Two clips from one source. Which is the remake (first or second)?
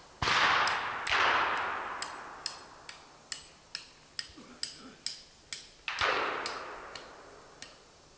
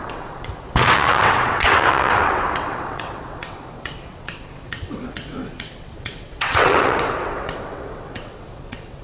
second